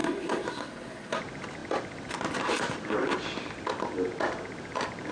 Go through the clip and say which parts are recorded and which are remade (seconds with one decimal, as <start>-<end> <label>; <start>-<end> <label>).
0.0-1.2 remade; 1.2-5.1 recorded